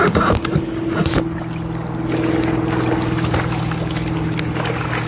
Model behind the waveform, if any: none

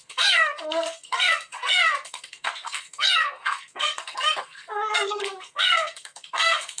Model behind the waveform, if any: codec, SNAC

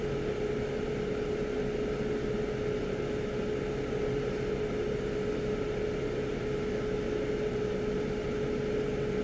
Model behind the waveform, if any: none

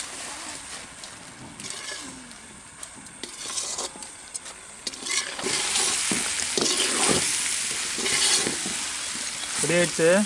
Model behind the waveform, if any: none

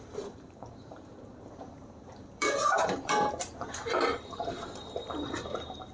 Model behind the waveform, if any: vocoder, BigVGAN v2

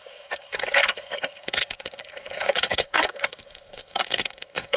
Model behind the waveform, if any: codec, SNAC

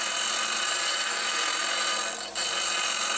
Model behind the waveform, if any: none